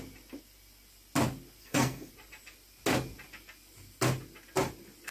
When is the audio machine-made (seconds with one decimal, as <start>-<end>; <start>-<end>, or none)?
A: 1.6-2.1